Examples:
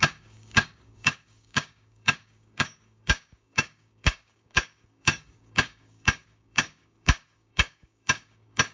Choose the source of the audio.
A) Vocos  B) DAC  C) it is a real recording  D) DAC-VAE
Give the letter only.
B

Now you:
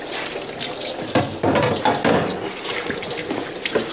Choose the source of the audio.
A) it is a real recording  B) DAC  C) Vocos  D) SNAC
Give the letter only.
A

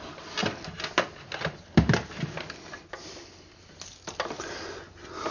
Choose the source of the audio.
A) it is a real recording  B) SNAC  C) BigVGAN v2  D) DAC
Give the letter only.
A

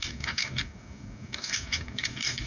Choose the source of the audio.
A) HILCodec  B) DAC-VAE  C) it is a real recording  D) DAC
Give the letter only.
D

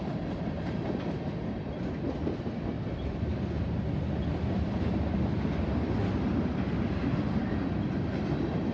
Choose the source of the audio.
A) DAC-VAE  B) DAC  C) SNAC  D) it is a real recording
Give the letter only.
D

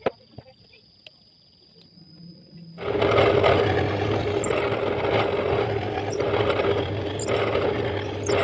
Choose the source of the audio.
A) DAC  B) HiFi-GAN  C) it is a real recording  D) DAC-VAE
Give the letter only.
C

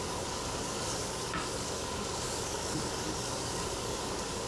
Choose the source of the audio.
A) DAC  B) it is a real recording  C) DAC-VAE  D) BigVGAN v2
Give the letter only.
A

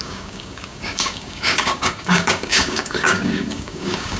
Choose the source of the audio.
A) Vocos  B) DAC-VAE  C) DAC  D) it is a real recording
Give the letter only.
C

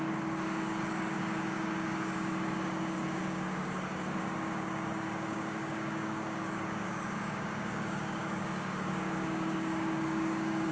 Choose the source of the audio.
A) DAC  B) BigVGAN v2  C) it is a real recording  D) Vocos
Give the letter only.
A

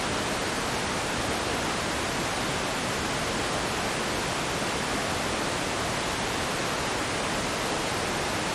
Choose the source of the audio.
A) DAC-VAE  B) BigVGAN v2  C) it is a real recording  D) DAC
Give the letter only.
C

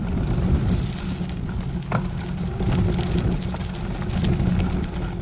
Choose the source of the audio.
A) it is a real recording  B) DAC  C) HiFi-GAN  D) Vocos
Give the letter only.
A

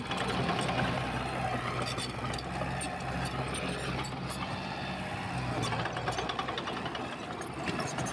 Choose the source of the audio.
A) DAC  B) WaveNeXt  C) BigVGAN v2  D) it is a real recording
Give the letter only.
D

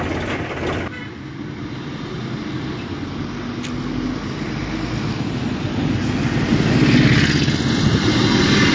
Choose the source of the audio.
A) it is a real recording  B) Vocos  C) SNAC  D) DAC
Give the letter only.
A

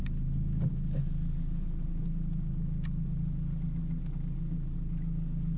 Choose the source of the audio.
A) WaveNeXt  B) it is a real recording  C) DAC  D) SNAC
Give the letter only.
B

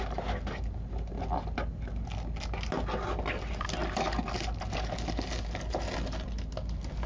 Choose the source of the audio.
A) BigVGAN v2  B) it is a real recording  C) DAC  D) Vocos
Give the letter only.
B